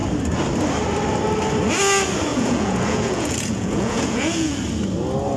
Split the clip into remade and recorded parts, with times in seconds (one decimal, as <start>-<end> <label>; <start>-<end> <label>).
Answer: 0.0-2.3 recorded; 2.3-4.6 remade; 4.6-5.4 recorded